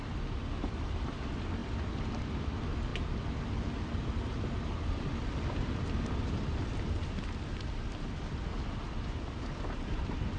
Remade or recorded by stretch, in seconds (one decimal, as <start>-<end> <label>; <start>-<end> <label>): 0.0-10.4 recorded